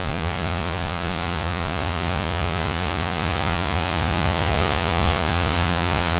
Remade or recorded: remade